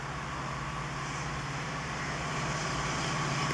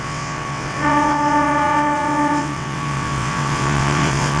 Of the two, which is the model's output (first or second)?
second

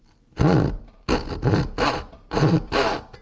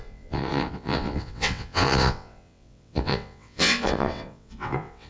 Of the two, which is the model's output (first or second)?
second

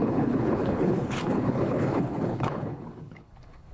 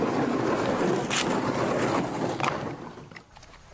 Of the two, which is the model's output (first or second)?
first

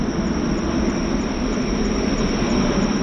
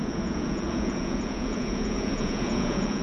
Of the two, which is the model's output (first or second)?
second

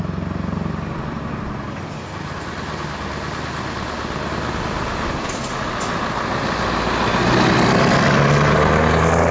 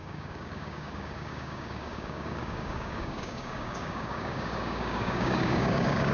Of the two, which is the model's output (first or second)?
second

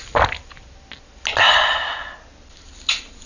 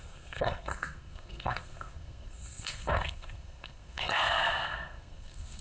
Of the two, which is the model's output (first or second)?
second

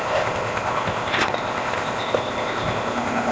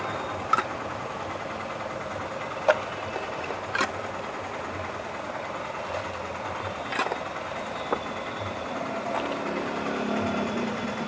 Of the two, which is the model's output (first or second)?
first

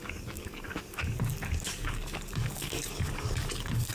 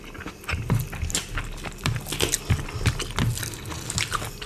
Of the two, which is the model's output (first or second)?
first